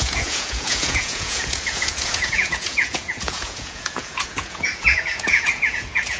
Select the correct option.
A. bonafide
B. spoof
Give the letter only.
B